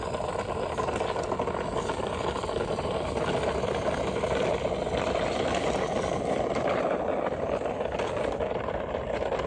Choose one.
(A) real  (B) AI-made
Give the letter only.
A